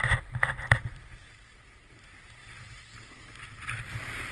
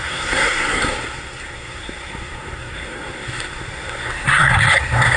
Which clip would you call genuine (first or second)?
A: first